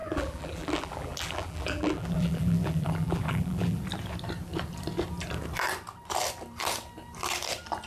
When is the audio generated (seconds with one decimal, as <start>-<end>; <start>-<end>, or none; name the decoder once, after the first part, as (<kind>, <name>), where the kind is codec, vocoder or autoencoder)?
0.0-3.8 (vocoder, BigVGAN v2)